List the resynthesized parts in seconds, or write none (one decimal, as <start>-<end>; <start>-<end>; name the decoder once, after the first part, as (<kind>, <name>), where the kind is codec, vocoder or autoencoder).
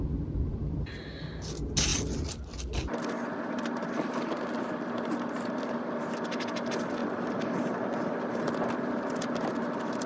7.0-10.1 (vocoder, BigVGAN v2)